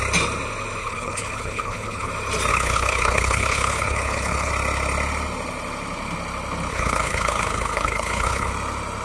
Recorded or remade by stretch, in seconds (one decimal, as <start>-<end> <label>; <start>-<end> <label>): 0.0-0.8 recorded; 0.8-2.1 remade; 2.1-2.5 recorded; 2.5-4.5 remade; 4.5-6.7 recorded; 6.7-8.5 remade; 8.5-9.0 recorded